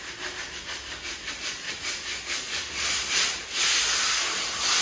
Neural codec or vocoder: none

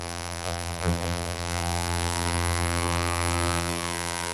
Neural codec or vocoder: vocoder, BigVGAN v2